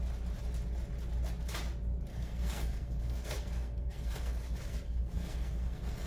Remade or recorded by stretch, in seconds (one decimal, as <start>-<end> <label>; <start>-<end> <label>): 0.0-2.1 recorded; 2.1-6.1 remade